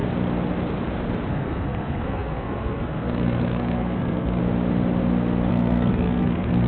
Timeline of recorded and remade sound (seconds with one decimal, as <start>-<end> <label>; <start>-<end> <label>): 0.0-1.3 recorded; 1.3-4.4 remade; 4.4-5.5 recorded; 5.5-6.7 remade